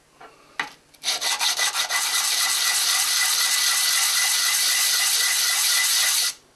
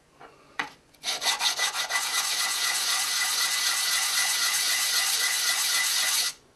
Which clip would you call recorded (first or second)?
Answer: first